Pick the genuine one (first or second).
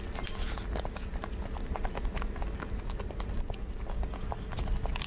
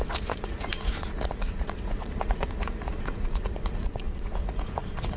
first